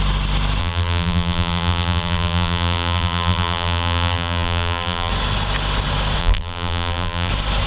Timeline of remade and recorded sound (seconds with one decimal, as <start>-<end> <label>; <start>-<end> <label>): 0.0-0.6 recorded; 0.6-5.1 remade; 5.1-6.2 recorded; 6.2-7.3 remade; 7.3-7.7 recorded